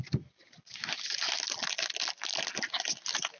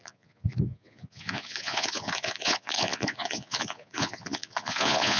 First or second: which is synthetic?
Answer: second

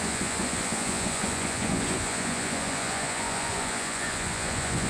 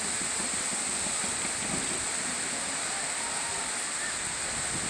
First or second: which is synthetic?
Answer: first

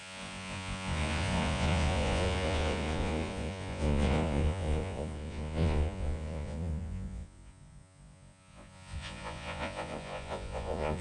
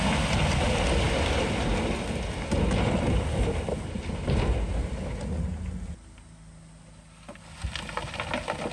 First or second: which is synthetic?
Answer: first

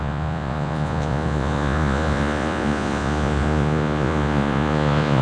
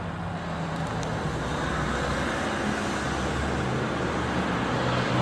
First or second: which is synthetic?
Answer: first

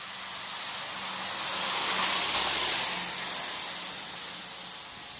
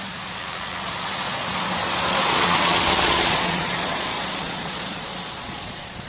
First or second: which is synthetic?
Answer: second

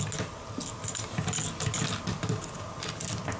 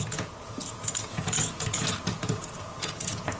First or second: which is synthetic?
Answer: second